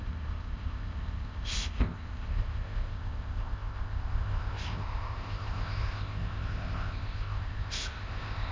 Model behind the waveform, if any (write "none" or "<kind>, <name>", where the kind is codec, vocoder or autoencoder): codec, ZipCodec